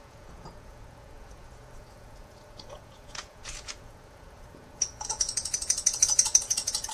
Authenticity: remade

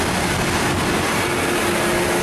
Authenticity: recorded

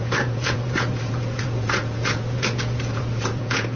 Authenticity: remade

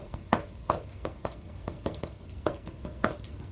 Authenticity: remade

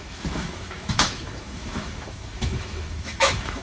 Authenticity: remade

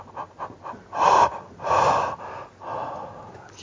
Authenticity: recorded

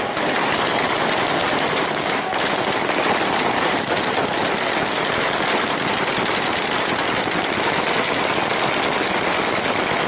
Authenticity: recorded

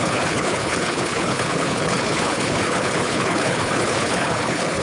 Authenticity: remade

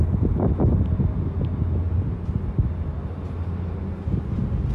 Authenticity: recorded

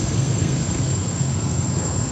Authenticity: remade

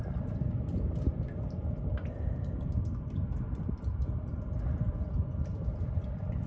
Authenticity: remade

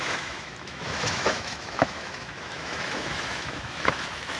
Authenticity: remade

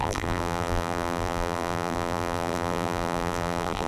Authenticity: remade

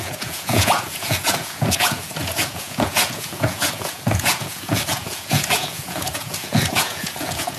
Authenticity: remade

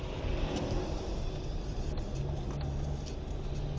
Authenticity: recorded